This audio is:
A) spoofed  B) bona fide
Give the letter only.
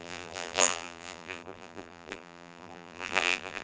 A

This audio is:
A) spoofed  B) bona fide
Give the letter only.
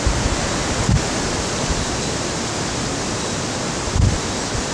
B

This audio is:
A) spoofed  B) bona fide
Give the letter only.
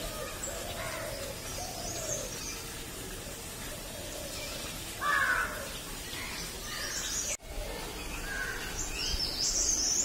B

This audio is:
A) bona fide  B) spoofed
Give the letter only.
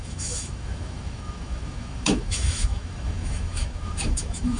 B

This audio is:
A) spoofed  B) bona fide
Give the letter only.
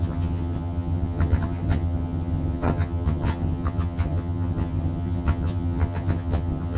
A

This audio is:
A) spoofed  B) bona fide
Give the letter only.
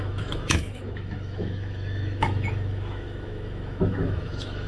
A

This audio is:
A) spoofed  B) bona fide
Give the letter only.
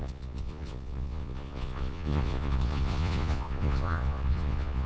A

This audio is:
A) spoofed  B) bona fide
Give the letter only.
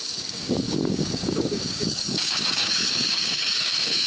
A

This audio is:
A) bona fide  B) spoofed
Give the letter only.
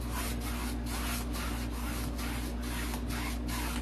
A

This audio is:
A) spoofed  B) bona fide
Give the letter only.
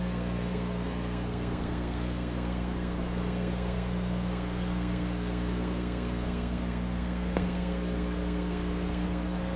A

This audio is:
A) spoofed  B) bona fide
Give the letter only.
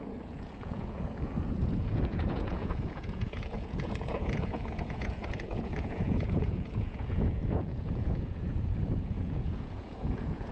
A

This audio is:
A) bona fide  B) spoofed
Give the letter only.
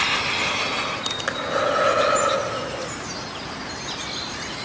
A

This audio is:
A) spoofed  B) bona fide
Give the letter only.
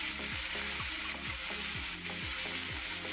B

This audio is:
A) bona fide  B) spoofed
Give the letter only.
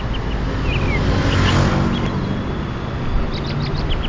A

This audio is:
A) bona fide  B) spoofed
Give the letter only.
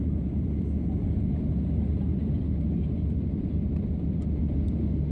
B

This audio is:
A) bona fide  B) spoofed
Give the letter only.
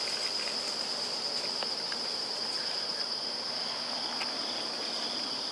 A